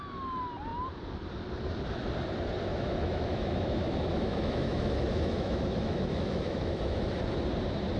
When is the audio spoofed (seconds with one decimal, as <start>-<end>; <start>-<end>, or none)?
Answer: 2.7-7.1